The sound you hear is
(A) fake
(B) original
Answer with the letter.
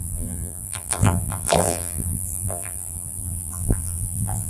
A